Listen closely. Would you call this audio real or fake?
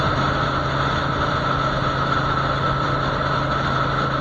real